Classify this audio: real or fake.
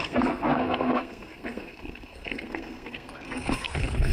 fake